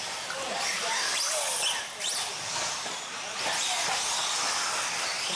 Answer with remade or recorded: recorded